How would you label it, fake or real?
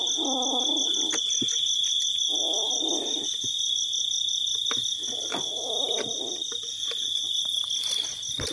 real